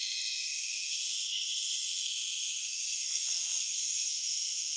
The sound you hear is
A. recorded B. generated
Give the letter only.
B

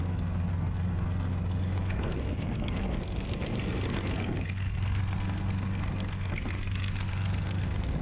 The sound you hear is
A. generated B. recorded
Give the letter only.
A